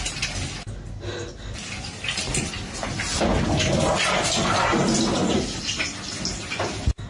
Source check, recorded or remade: recorded